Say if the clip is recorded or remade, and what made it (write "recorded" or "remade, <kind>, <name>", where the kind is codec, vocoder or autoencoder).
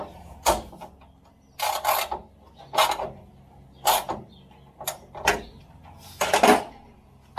recorded